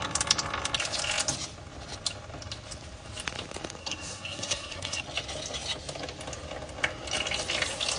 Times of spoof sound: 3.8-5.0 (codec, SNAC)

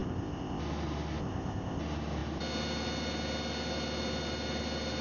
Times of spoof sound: 0.0-0.6 (codec, ZipCodec); 1.2-1.8